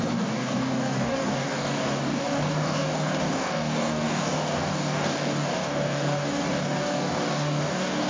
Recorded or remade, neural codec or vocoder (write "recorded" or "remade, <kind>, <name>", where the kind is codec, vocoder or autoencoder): remade, codec, DAC